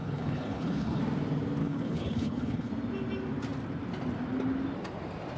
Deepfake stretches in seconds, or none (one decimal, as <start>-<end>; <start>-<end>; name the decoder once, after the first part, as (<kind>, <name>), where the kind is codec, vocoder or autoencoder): 0.0-1.0 (codec, HILCodec); 1.6-2.7

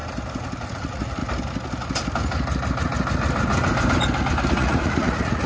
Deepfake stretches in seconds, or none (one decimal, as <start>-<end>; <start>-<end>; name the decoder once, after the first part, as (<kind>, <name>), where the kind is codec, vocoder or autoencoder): 0.7-1.2 (vocoder, Vocos); 4.5-5.5

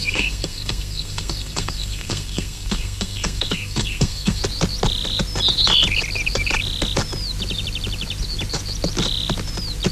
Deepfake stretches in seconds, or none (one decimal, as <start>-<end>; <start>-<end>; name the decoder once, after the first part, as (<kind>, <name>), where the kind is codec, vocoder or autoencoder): 0.0-4.4 (codec, SNAC)